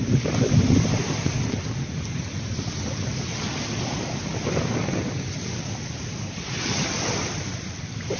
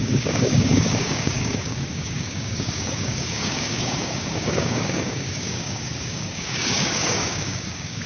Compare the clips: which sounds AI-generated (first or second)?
second